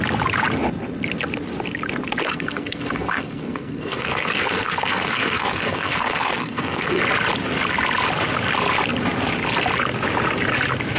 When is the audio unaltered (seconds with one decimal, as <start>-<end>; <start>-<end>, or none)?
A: 0.0-2.2; 7.0-11.0